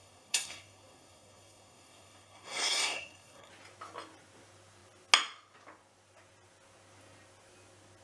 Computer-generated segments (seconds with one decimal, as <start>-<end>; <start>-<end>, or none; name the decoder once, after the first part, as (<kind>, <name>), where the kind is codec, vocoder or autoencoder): 0.0-3.5 (codec, SNAC)